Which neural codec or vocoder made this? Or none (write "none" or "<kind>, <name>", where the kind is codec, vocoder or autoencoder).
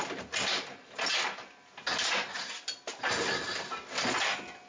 none